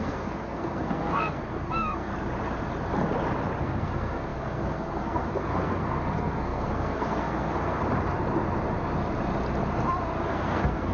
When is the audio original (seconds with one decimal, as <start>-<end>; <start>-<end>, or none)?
2.1-3.6; 7.8-10.3